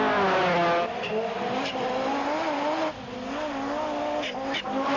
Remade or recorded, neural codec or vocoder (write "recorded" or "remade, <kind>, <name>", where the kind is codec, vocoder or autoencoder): recorded